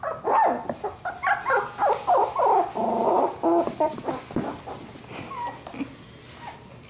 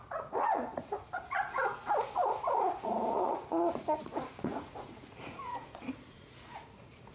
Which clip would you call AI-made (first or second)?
second